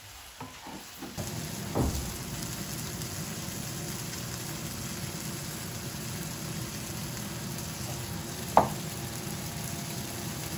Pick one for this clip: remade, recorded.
recorded